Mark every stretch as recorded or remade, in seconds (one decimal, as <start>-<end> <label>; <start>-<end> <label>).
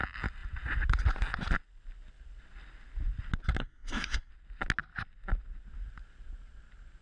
0.0-3.6 recorded; 3.6-4.3 remade; 4.3-7.0 recorded